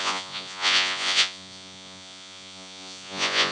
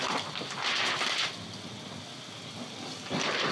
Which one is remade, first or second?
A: first